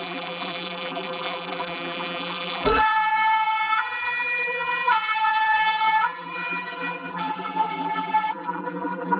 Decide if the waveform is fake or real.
fake